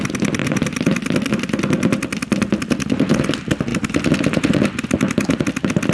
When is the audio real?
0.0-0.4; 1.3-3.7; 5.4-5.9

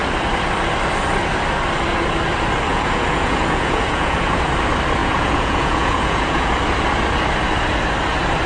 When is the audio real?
0.0-2.7; 4.4-5.0; 6.5-8.5

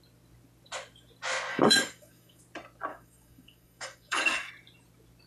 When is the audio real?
0.0-1.5; 2.4-2.9; 4.5-5.3

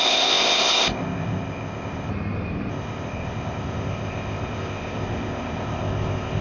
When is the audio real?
2.1-2.7

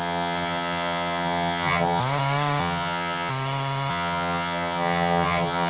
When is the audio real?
2.0-2.6; 3.3-3.9

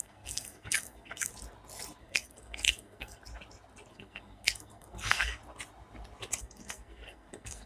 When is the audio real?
1.3-2.0; 3.2-3.9; 5.4-6.4

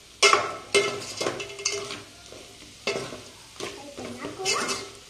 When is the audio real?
0.0-5.1